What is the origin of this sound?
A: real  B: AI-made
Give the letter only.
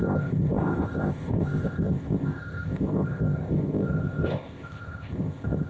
B